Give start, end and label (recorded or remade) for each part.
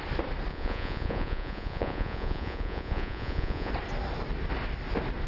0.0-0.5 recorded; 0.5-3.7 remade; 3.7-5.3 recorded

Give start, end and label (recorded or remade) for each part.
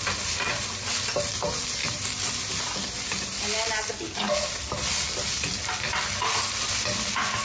0.0-7.4 recorded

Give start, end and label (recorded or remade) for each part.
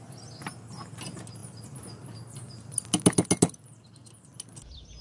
0.0-5.0 recorded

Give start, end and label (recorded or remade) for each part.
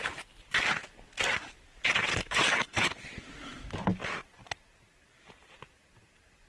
0.0-2.1 recorded; 2.1-2.9 remade; 2.9-6.5 recorded